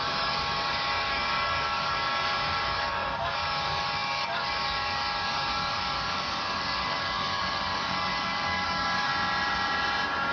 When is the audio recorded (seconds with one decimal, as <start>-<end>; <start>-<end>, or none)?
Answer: 9.1-10.3